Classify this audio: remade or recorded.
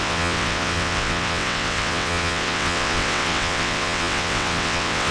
remade